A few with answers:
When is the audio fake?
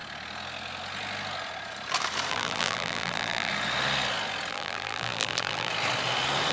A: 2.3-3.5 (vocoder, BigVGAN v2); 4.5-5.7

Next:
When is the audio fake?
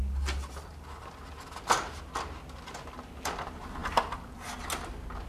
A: none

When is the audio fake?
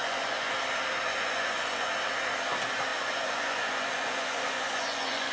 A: 0.0-0.5 (vocoder, Vocos); 1.1-1.9; 2.9-5.3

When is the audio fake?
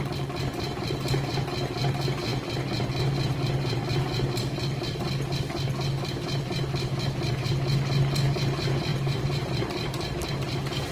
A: 8.9-9.5 (vocoder, BigVGAN v2)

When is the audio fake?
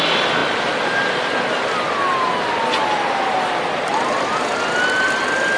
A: 0.4-0.9 (vocoder, BigVGAN v2); 3.9-4.5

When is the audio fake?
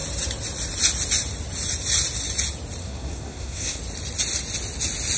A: 2.8-3.8 (codec, SNAC)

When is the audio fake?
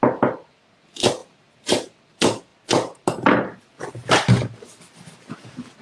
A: 1.2-2.0 (vocoder, BigVGAN v2)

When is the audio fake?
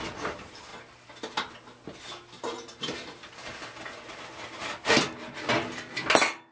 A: none